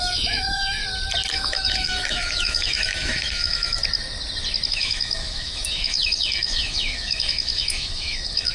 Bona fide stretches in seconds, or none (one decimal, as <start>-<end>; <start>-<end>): 0.8-1.3; 3.8-4.7